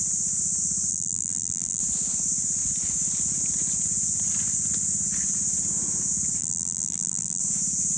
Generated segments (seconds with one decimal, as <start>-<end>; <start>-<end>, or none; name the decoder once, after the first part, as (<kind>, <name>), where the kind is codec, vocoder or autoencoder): 0.9-1.8 (vocoder, BigVGAN v2); 6.4-7.4